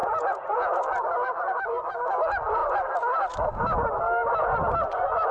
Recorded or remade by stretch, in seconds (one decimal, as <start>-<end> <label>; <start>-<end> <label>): 0.0-0.7 remade; 0.7-5.3 recorded